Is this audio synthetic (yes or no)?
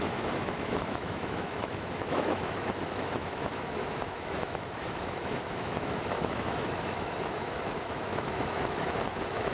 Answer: yes